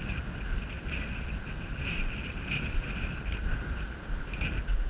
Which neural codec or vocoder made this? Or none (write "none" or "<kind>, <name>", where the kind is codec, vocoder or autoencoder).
none